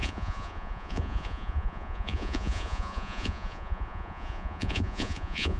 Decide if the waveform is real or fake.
fake